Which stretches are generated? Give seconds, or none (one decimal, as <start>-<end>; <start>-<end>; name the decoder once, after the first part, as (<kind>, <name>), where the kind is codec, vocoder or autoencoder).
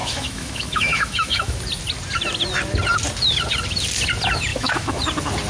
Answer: 0.0-1.6 (autoencoder, DAC-VAE); 4.5-5.0